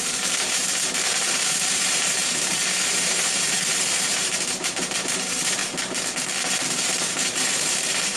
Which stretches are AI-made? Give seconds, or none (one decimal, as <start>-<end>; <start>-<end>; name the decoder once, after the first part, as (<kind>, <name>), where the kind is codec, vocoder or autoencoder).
0.0-5.6 (vocoder, BigVGAN v2); 6.7-8.2